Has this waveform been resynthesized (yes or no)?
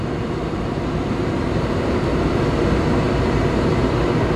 no